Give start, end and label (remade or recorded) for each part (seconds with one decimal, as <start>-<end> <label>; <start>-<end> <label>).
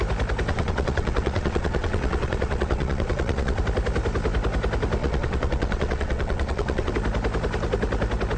0.0-0.5 recorded; 0.5-3.6 remade; 3.6-5.0 recorded; 5.0-6.9 remade; 6.9-8.4 recorded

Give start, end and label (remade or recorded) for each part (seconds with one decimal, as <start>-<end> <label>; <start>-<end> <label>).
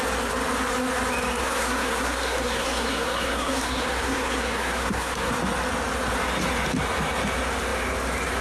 0.0-1.4 recorded; 1.4-5.3 remade; 5.3-8.4 recorded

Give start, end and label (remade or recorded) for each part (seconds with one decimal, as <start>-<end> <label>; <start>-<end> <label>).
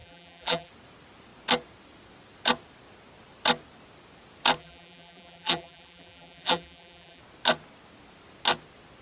0.0-0.7 remade; 0.7-4.6 recorded; 4.6-7.2 remade; 7.2-9.0 recorded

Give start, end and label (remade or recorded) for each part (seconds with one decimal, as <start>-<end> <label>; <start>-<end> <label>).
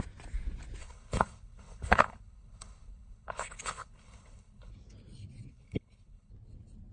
0.0-0.8 recorded; 0.8-4.7 remade; 4.7-5.5 recorded; 5.5-6.3 remade; 6.3-6.9 recorded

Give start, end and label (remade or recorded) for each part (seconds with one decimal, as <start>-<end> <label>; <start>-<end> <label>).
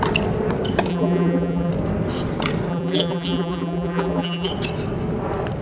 0.0-0.9 recorded; 0.9-1.7 remade; 1.7-2.7 recorded; 2.7-4.5 remade; 4.5-5.6 recorded